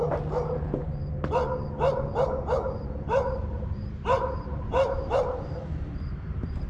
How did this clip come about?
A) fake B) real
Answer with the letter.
A